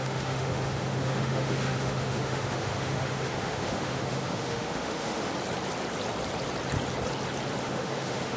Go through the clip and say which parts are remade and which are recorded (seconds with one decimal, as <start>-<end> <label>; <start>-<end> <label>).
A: 0.0-5.3 remade; 5.3-7.6 recorded; 7.6-8.4 remade